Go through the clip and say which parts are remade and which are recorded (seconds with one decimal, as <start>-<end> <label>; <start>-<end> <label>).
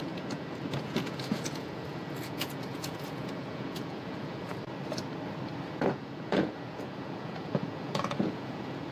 0.0-4.5 remade; 4.5-5.7 recorded; 5.7-8.9 remade